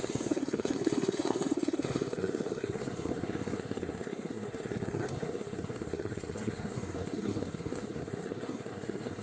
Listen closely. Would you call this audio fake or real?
fake